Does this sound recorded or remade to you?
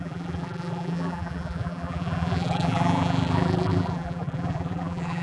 remade